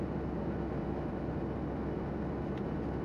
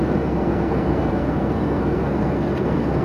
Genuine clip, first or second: first